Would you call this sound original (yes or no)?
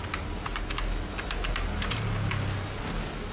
yes